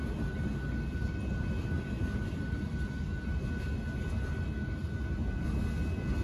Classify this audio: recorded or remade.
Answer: recorded